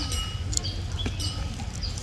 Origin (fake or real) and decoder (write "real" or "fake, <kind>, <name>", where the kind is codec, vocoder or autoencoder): real